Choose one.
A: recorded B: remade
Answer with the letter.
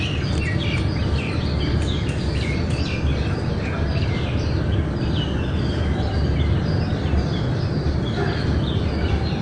A